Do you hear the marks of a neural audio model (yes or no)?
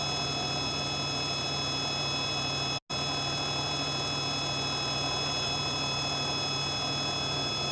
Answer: no